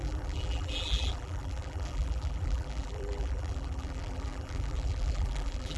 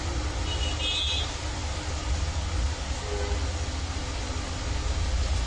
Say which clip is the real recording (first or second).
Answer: second